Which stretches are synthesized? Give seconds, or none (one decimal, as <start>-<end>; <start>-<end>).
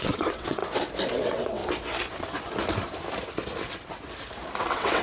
0.0-0.6; 1.2-1.6; 4.6-5.0